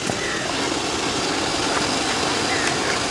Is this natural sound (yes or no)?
yes